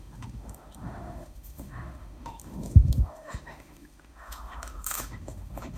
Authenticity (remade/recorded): remade